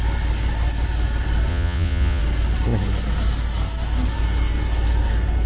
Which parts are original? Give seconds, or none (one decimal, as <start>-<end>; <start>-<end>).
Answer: 0.0-1.5; 2.2-5.5